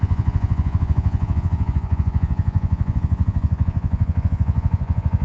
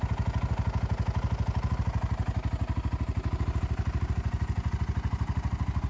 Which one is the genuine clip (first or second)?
second